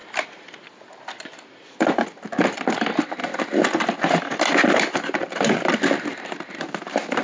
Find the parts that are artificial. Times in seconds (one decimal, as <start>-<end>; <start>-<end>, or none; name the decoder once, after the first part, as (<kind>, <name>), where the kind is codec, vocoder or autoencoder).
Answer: 0.0-2.6 (vocoder, BigVGAN v2); 3.2-4.1; 6.1-7.2